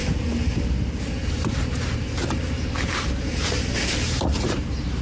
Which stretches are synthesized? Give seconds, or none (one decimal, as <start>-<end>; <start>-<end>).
1.3-5.0